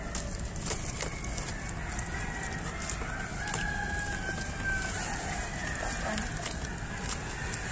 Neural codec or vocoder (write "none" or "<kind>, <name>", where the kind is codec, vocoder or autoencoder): none